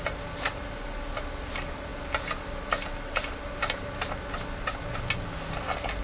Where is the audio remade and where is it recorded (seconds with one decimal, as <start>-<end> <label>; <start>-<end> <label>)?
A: 0.0-6.0 recorded